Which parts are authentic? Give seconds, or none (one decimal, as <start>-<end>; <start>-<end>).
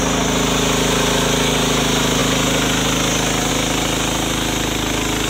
0.0-5.3